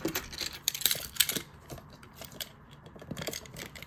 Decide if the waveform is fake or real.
fake